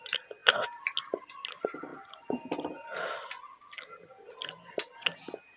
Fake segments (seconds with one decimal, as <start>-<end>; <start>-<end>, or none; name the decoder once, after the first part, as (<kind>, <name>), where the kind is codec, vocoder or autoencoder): none